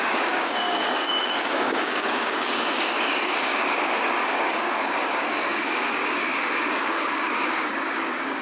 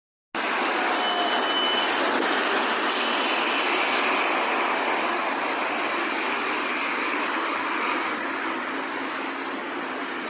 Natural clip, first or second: second